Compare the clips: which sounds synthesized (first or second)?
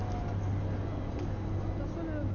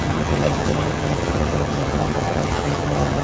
second